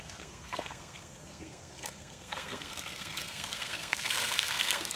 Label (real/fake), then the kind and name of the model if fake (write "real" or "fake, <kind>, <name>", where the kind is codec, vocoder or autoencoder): fake, codec, SNAC